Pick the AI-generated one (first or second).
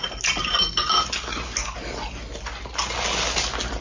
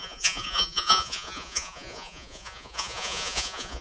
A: second